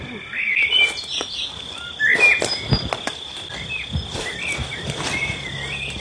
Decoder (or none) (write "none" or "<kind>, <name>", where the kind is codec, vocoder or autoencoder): none